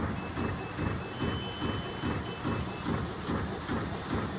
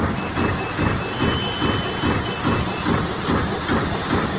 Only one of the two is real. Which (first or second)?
first